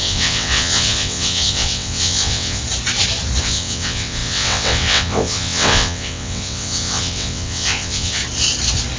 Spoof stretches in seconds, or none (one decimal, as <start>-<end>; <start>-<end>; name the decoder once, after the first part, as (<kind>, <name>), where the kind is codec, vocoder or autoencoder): 0.0-2.6 (vocoder, WaveNeXt); 3.4-8.2